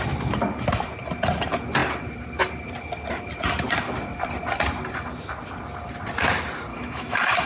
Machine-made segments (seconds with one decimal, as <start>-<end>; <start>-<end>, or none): 6.7-7.5